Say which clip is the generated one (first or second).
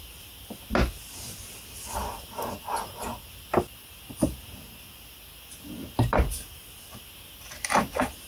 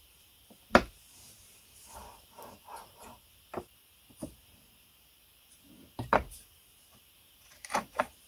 second